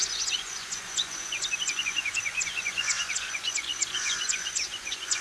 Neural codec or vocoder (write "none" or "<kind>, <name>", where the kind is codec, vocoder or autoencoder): vocoder, Vocos